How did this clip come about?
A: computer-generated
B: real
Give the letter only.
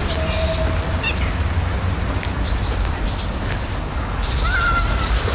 B